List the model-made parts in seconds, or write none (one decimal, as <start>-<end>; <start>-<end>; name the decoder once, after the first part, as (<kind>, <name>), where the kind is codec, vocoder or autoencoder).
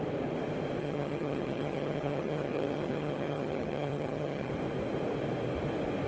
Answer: 0.8-4.5 (vocoder, HiFi-GAN)